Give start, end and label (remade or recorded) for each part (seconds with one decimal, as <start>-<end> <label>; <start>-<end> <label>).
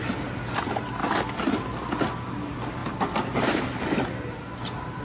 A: 0.0-5.0 recorded